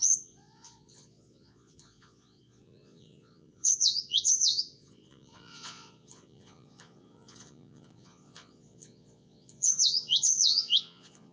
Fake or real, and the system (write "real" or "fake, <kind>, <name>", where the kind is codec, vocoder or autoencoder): fake, vocoder, Vocos